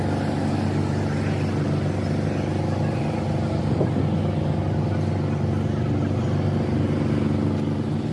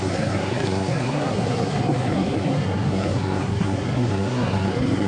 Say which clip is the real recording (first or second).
first